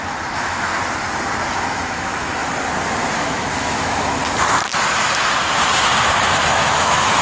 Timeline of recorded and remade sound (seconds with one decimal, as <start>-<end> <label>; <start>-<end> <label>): 0.0-0.7 remade; 0.7-1.6 recorded; 1.6-2.4 remade; 2.4-3.2 recorded; 3.2-4.2 remade; 4.2-6.5 recorded; 6.5-7.2 remade